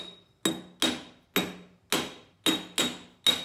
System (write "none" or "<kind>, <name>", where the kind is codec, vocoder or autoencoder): none